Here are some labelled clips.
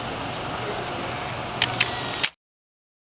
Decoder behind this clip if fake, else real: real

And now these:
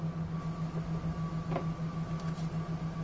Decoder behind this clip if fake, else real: real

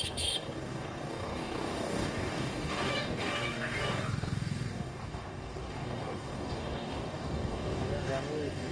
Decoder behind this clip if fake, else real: fake, codec, DAC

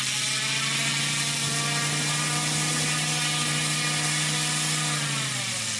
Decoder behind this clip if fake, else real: real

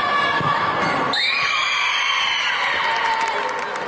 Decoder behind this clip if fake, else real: real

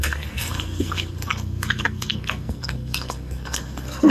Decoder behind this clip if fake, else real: fake, codec, SNAC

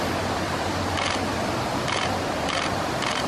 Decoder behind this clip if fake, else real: real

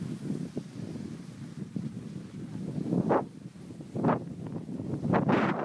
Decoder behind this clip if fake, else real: real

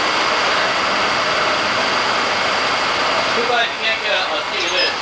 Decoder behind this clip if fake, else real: real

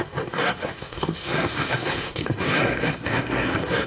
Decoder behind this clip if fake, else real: fake, codec, SNAC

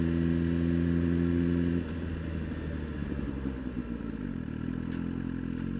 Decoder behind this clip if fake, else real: real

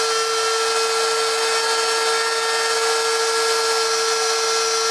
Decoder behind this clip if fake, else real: real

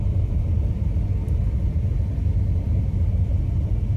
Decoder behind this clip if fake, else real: real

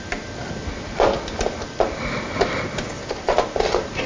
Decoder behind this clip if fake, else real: real